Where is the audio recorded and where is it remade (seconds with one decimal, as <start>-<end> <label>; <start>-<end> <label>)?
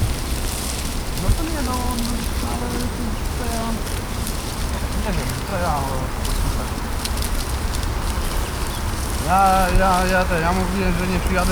0.0-5.5 recorded; 5.5-6.9 remade; 6.9-11.5 recorded